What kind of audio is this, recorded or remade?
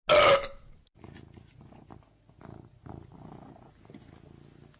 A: recorded